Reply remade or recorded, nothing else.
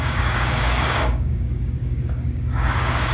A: remade